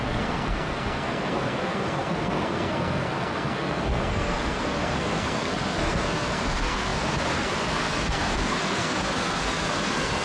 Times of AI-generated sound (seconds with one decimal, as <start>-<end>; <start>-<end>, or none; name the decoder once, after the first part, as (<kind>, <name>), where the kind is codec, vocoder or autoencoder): 0.0-10.2 (codec, SNAC)